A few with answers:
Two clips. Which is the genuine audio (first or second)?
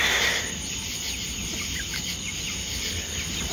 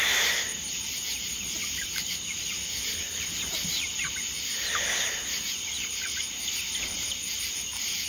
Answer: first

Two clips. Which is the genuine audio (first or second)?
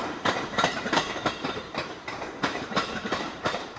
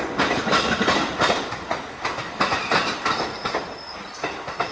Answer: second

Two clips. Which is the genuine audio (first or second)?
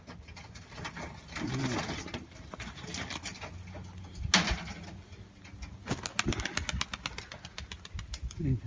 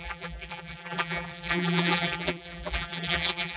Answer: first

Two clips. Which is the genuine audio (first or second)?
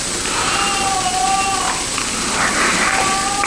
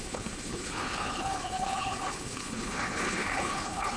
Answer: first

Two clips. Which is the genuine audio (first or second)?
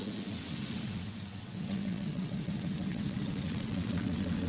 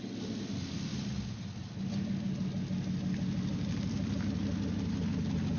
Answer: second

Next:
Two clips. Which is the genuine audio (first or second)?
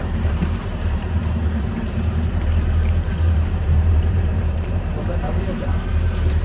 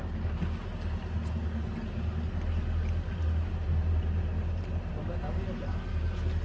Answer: second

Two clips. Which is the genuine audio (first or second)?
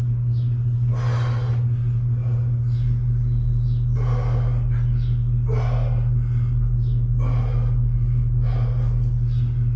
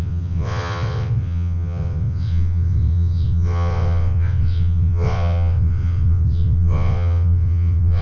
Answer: first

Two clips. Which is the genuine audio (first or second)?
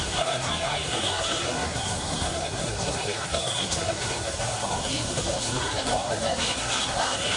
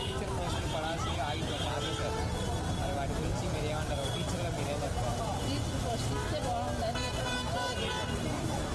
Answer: second